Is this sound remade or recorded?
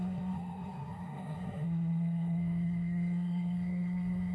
remade